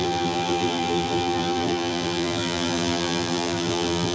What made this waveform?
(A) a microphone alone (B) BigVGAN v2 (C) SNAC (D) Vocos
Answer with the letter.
B